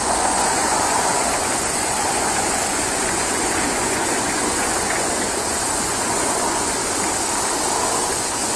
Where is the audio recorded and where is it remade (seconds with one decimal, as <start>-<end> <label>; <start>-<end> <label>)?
0.0-6.8 remade; 6.8-8.0 recorded; 8.0-8.6 remade